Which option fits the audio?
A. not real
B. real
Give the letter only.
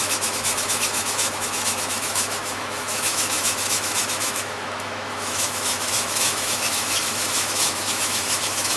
A